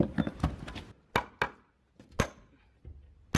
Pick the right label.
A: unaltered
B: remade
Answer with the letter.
A